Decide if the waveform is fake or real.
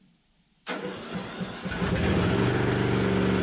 real